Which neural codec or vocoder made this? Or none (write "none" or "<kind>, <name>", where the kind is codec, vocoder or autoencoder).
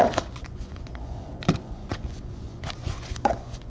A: vocoder, Vocos